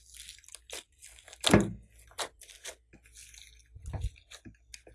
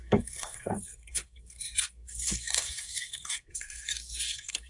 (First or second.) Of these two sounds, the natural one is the first